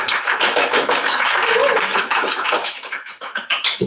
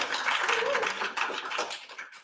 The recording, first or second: second